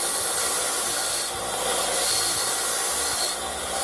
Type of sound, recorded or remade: recorded